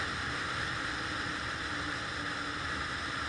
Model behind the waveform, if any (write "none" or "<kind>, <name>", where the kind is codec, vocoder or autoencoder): none